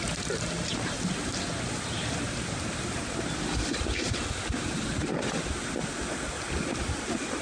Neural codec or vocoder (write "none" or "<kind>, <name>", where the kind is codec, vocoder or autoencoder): none